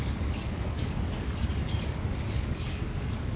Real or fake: fake